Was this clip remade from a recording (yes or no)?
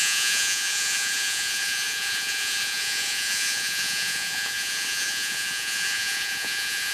yes